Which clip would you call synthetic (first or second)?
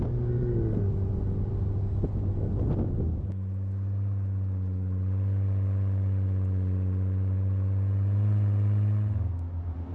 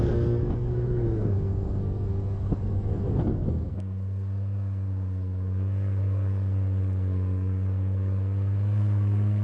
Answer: second